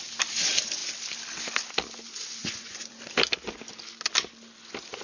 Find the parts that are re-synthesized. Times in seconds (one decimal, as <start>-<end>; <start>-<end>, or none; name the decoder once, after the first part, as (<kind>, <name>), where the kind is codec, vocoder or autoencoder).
2.4-2.9 (vocoder, Vocos)